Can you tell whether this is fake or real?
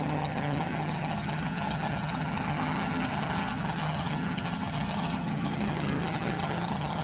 fake